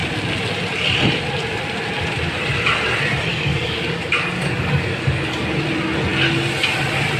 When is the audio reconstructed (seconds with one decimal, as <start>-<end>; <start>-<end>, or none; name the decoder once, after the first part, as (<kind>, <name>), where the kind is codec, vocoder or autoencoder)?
3.3-5.4 (codec, DAC)